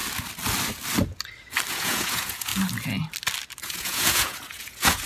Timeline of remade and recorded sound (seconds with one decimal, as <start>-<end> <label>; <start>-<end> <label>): 0.0-1.7 recorded; 1.7-2.5 remade; 2.5-3.6 recorded; 3.6-5.1 remade